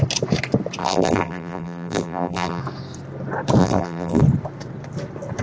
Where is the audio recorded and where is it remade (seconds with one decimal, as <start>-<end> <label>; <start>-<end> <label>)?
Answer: 0.0-0.8 recorded; 0.8-2.6 remade; 2.6-3.6 recorded; 3.6-4.2 remade; 4.2-5.4 recorded